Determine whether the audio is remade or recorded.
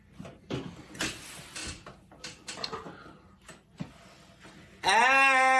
recorded